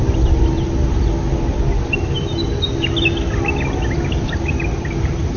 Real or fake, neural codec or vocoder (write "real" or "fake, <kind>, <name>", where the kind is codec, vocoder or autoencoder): real